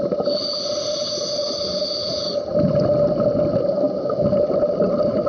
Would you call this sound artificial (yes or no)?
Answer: no